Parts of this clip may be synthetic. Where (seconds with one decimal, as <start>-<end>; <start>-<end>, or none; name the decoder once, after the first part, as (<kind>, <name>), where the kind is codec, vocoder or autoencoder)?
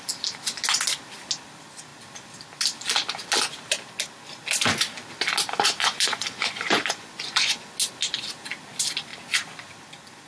5.8-7.7 (vocoder, Vocos)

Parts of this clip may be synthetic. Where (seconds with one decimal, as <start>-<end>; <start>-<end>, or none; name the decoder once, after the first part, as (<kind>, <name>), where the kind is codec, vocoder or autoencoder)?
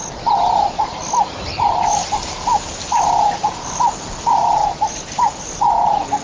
none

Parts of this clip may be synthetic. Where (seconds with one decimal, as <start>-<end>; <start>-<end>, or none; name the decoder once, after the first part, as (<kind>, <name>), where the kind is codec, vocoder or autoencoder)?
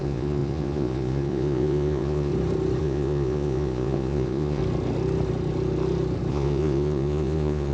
0.0-2.3 (vocoder, Vocos); 2.8-4.6; 6.3-7.7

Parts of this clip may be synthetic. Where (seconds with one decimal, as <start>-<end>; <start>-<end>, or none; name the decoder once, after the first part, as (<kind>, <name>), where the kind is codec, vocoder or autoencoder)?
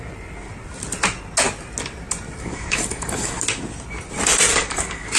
2.4-3.4 (codec, DAC); 4.5-5.2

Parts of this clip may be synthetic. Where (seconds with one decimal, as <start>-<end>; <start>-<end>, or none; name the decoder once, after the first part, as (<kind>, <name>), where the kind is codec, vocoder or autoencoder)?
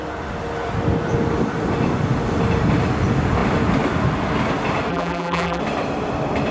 4.9-5.6 (vocoder, BigVGAN v2)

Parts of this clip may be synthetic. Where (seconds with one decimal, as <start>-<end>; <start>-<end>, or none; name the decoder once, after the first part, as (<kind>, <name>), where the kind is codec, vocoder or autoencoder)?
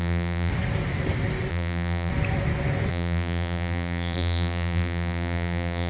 0.0-0.5 (vocoder, BigVGAN v2); 1.5-2.1; 2.9-5.9